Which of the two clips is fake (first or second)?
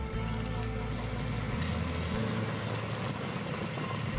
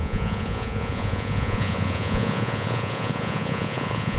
second